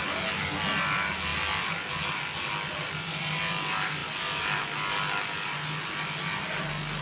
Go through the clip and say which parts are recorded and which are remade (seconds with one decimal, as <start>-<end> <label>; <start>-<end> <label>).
0.0-7.0 recorded